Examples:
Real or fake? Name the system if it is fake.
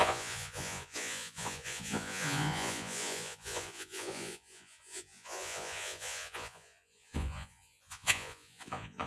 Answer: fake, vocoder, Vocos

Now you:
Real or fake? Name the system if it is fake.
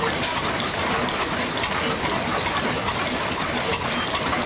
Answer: real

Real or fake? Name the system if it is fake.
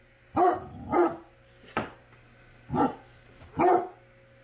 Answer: real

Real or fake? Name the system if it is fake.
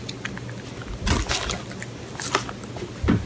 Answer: real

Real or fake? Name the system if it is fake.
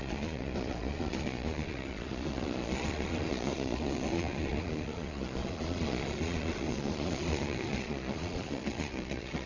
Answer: fake, vocoder, Vocos